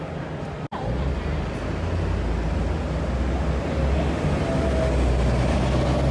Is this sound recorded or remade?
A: recorded